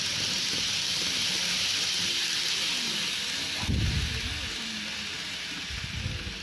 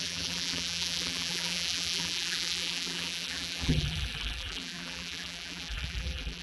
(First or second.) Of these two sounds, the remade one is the second